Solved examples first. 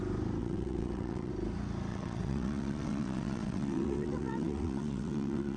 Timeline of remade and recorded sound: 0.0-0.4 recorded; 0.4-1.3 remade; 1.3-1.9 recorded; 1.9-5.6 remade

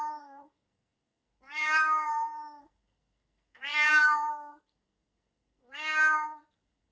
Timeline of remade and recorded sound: 0.0-6.9 remade

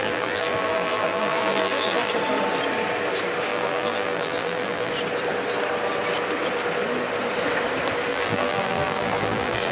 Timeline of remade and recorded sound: 0.0-2.1 remade; 2.1-3.5 recorded; 3.5-4.9 remade; 4.9-8.1 recorded; 8.1-9.7 remade

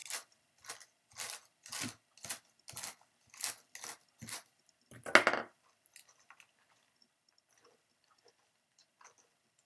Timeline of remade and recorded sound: 0.0-9.7 recorded

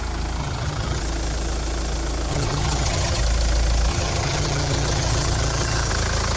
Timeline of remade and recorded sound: 0.0-0.4 recorded; 0.4-1.0 remade; 1.0-2.3 recorded; 2.3-3.2 remade; 3.2-3.9 recorded; 3.9-5.9 remade; 5.9-6.4 recorded

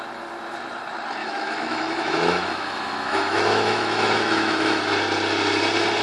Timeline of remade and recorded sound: 0.0-1.2 recorded; 1.2-4.8 remade; 4.8-6.0 recorded